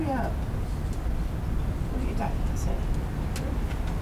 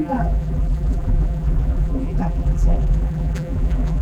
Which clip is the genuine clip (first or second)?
first